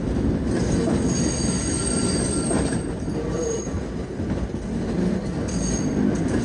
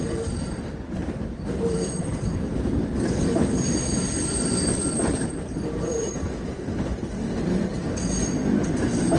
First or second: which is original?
first